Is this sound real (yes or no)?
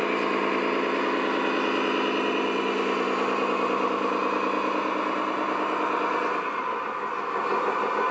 yes